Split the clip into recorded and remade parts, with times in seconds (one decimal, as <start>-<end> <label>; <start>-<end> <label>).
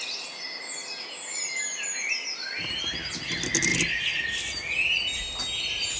0.0-6.0 recorded